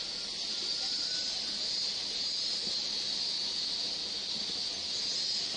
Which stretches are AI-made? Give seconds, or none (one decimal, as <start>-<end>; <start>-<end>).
none